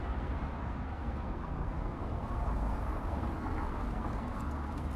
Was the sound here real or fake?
fake